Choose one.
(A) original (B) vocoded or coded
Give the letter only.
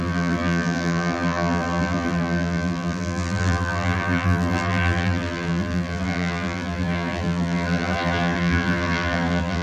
B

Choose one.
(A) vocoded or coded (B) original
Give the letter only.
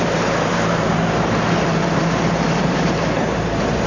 A